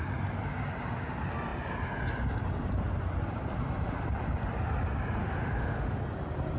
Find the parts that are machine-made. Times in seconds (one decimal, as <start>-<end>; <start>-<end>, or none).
5.2-6.0